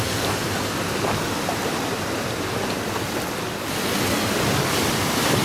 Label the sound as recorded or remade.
recorded